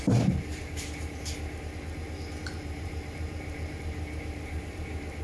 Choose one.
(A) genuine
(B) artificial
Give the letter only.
B